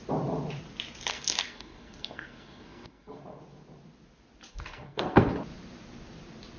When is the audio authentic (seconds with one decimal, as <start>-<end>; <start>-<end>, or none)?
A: 0.0-1.1; 3.4-4.5; 5.3-6.6